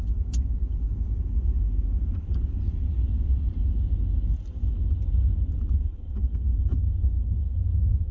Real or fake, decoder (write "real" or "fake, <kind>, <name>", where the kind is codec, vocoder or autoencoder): real